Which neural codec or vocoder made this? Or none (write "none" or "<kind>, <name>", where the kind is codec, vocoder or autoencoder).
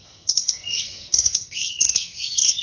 codec, SNAC